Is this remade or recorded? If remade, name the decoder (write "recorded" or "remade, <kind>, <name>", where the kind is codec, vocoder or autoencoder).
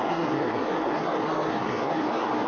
remade, codec, SNAC